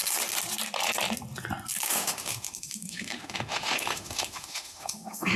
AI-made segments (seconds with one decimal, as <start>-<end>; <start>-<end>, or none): 1.8-5.4